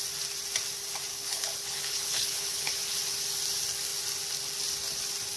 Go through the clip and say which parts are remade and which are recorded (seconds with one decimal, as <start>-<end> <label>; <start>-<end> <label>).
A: 0.0-1.1 recorded; 1.1-2.7 remade; 2.7-5.4 recorded